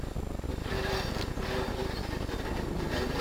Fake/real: real